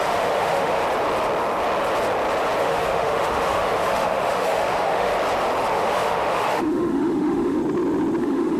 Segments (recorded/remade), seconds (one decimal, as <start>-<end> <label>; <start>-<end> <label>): 0.0-0.8 remade; 0.8-2.6 recorded; 2.6-5.1 remade; 5.1-5.7 recorded; 5.7-7.6 remade; 7.6-8.2 recorded; 8.2-8.6 remade